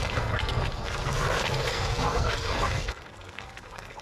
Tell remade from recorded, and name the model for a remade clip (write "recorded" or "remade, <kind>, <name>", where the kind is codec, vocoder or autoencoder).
remade, codec, SNAC